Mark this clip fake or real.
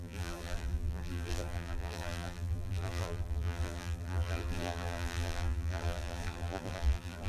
fake